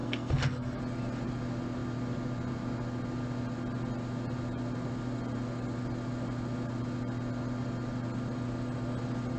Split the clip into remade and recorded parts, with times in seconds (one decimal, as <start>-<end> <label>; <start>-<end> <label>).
0.0-0.8 remade; 0.8-9.4 recorded